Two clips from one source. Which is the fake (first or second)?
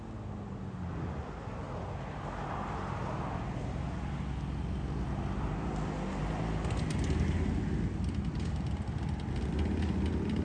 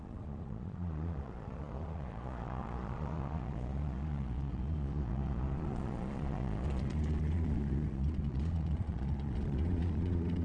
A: second